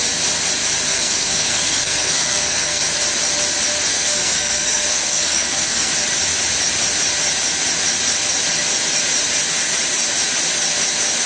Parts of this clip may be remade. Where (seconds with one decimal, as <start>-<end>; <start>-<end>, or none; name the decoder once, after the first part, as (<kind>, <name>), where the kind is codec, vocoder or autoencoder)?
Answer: 0.9-2.8 (codec, SNAC); 3.9-5.9